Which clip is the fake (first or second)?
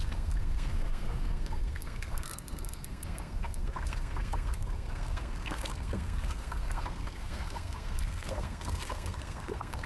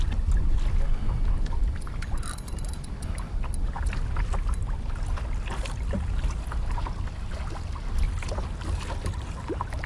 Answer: first